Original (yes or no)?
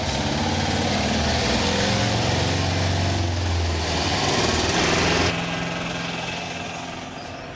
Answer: yes